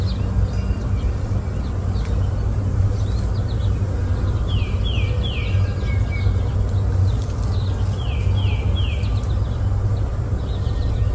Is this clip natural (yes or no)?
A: yes